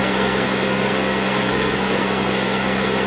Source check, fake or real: fake